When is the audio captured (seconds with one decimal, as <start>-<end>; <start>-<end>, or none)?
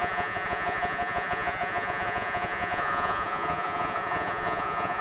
none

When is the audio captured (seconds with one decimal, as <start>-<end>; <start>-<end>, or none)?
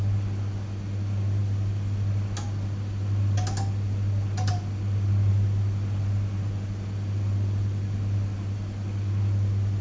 0.0-9.8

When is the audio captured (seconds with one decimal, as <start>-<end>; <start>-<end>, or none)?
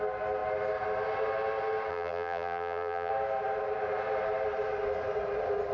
0.0-1.9; 3.1-5.7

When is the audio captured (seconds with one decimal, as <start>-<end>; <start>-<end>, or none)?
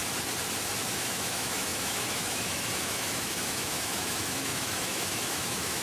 0.0-0.9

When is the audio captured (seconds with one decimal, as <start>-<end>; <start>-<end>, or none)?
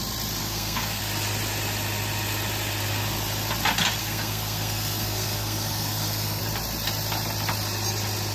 0.0-0.4; 1.0-4.0; 6.4-8.3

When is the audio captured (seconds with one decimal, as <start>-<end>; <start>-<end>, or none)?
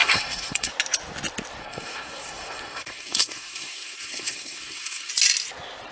0.7-1.6; 5.1-5.9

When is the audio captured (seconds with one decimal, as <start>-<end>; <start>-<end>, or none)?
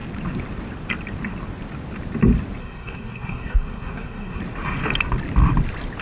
0.0-2.6; 4.4-6.0